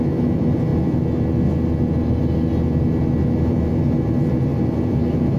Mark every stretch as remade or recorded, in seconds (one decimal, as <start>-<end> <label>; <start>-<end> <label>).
0.0-5.4 recorded

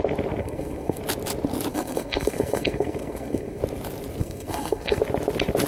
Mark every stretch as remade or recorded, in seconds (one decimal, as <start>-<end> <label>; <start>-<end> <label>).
0.0-0.4 recorded; 0.4-1.0 remade; 1.0-1.7 recorded; 1.7-3.6 remade; 3.6-4.2 recorded; 4.2-5.0 remade; 5.0-5.7 recorded

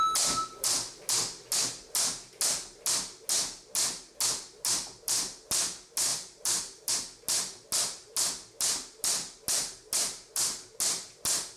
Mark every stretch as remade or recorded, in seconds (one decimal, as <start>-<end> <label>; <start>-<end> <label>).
0.0-6.1 recorded; 6.1-6.9 remade; 6.9-11.6 recorded

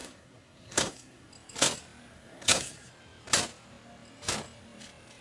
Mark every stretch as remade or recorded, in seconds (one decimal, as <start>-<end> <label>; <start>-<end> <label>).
0.0-1.3 remade; 1.3-2.1 recorded; 2.1-2.9 remade; 2.9-5.2 recorded

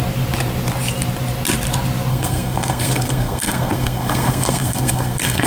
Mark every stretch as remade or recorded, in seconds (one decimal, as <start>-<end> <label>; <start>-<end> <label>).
0.0-2.1 recorded; 2.1-5.5 remade

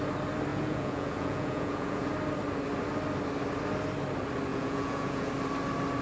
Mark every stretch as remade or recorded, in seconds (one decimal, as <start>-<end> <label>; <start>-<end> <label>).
0.0-0.5 recorded; 0.5-2.1 remade; 2.1-4.5 recorded; 4.5-5.3 remade; 5.3-6.0 recorded

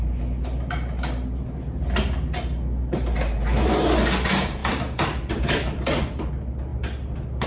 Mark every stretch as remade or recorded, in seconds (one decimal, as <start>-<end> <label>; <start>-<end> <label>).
0.0-4.6 recorded; 4.6-6.3 remade; 6.3-7.5 recorded